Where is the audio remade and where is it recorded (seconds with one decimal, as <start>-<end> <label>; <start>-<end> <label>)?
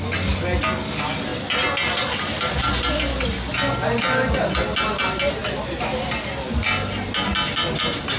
0.0-8.2 recorded